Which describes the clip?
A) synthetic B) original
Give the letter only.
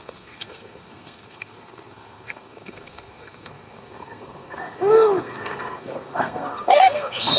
A